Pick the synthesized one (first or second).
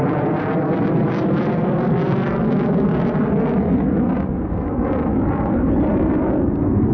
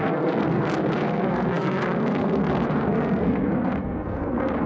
second